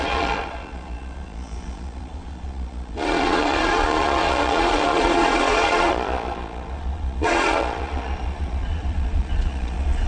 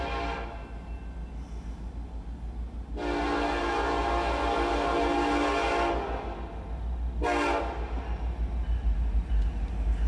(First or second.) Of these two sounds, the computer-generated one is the first